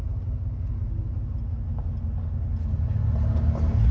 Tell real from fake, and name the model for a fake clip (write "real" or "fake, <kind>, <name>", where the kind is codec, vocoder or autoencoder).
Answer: real